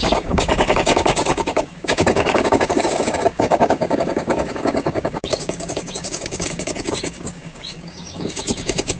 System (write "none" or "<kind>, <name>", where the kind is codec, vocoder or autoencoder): codec, DAC